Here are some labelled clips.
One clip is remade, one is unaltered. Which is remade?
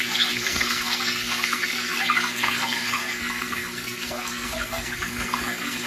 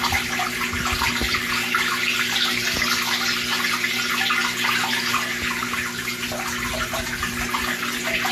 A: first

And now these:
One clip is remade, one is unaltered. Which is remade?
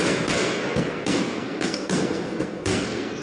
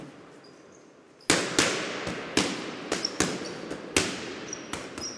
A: first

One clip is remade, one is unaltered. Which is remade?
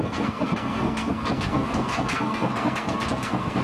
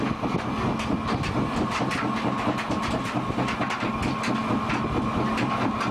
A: first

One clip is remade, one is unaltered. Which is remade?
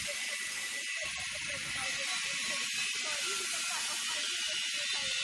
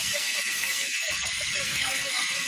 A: second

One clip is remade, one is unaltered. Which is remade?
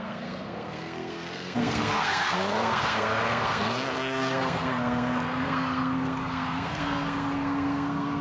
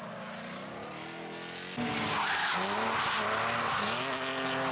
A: first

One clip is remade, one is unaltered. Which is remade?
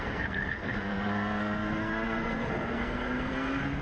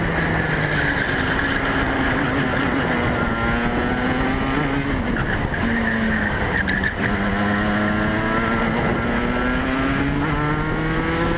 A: first